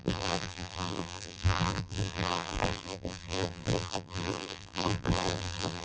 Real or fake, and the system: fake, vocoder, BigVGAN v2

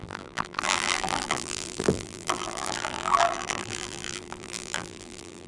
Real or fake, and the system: fake, vocoder, BigVGAN v2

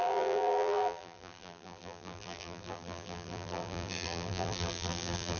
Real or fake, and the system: fake, vocoder, BigVGAN v2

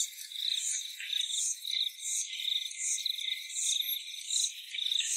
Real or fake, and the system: real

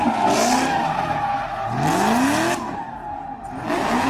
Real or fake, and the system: real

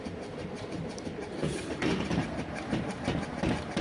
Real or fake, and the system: fake, vocoder, BigVGAN v2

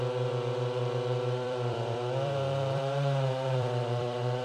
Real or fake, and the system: fake, vocoder, BigVGAN v2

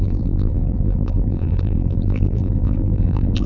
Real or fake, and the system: fake, vocoder, BigVGAN v2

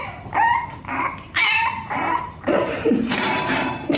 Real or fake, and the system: fake, vocoder, BigVGAN v2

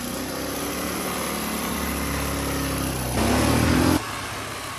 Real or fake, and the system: real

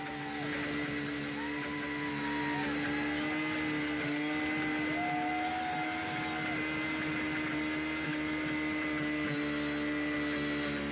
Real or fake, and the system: real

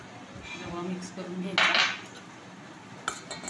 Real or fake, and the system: real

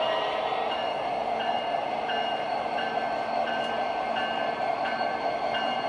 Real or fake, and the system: fake, vocoder, BigVGAN v2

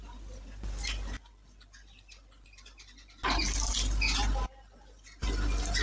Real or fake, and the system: real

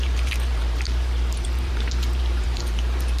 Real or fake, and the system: fake, vocoder, BigVGAN v2